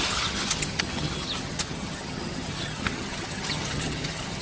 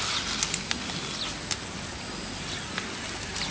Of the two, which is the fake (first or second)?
first